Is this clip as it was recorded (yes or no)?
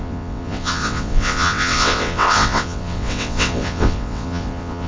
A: no